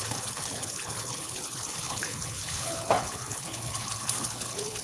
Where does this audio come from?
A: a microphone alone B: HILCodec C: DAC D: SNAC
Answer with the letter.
B